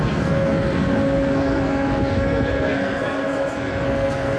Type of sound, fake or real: fake